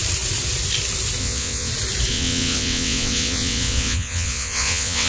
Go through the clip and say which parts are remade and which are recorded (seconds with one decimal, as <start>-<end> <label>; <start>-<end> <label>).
0.0-1.2 recorded; 1.2-1.7 remade; 1.7-2.1 recorded; 2.1-5.1 remade